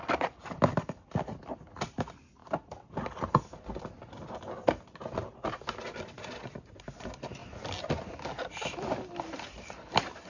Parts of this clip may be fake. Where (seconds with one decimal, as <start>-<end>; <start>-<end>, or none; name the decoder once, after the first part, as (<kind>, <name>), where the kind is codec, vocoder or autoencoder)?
none